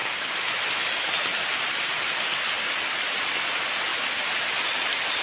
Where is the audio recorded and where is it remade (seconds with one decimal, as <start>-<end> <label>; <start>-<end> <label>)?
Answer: 0.0-5.2 recorded